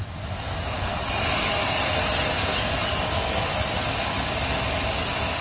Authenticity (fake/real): real